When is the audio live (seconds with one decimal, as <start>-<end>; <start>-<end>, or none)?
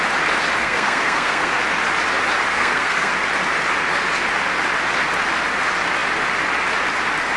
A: 0.0-0.6; 1.6-2.5; 3.1-7.4